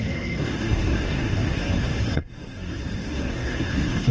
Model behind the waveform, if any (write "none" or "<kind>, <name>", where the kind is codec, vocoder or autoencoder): codec, SNAC